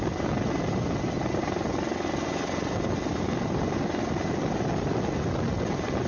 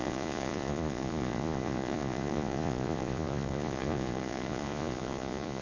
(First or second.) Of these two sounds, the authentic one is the first